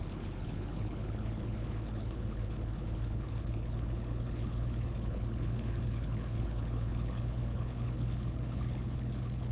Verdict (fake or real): fake